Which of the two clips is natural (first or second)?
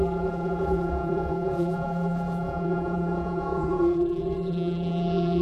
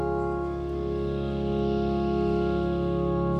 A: second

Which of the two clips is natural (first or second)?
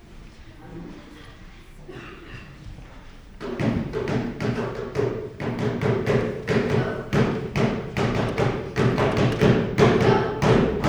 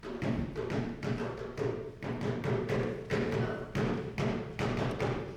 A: second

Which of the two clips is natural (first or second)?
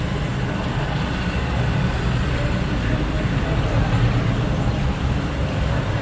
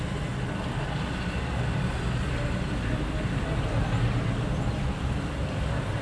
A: second